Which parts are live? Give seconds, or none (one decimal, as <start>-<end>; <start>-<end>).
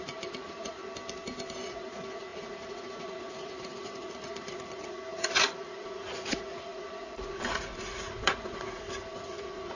0.8-1.7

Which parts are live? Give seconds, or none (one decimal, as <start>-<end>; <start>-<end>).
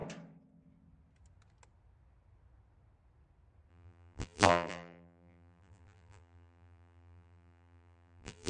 0.0-3.7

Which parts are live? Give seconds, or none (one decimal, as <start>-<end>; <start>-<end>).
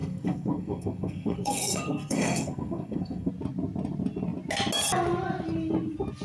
3.3-6.2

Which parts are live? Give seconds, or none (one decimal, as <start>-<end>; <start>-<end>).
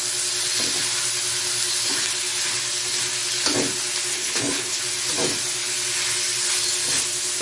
0.0-4.1; 4.8-7.4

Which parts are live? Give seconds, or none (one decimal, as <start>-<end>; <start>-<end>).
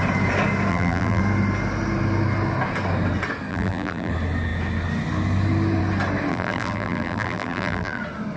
0.0-0.7; 1.2-3.5; 4.1-6.3; 8.0-8.4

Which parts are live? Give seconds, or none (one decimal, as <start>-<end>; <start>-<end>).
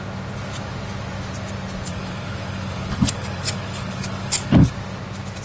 0.0-1.9; 4.7-5.4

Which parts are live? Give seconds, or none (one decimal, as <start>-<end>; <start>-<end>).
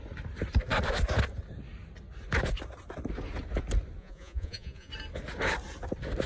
0.0-4.0; 4.9-6.3